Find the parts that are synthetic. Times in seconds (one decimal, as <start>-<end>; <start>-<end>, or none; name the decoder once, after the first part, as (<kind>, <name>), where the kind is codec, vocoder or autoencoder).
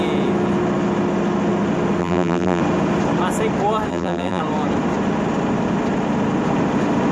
2.0-2.6 (vocoder, BigVGAN v2); 3.9-4.4